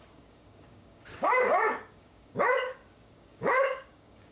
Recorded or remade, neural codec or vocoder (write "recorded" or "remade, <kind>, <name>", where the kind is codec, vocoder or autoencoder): remade, codec, DAC